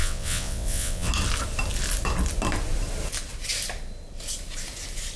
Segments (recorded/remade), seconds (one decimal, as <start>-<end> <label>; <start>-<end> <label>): 0.0-1.1 remade; 1.1-5.2 recorded